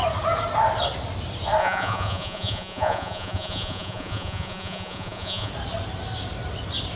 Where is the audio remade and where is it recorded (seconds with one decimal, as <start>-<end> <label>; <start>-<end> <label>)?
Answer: 0.0-1.6 recorded; 1.6-5.5 remade; 5.5-7.0 recorded